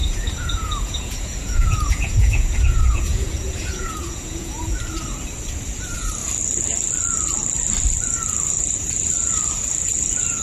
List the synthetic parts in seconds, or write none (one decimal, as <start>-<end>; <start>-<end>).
0.0-4.8